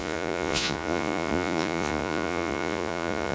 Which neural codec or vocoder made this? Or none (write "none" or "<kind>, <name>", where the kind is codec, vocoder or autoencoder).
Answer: vocoder, Vocos